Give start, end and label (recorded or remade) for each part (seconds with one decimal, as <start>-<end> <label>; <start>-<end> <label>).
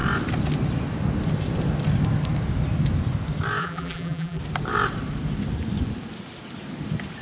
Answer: 0.0-3.6 recorded; 3.6-4.4 remade; 4.4-7.2 recorded